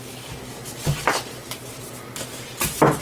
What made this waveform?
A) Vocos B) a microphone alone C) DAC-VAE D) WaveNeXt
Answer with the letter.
B